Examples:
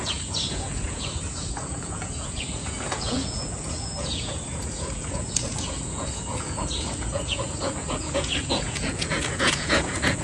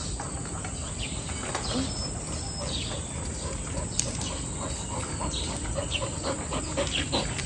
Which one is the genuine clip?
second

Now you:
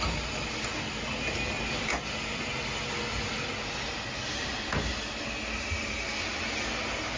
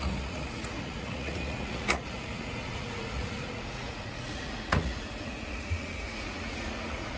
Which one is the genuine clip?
first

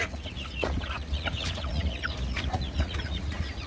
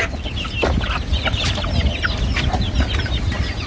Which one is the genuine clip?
second